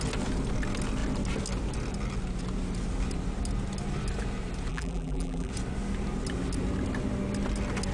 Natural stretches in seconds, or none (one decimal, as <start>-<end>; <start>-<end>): 0.0-4.7; 5.5-7.9